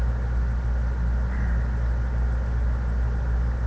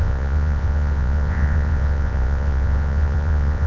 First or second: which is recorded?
first